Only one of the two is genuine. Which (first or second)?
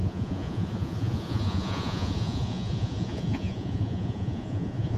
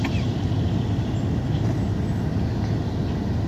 second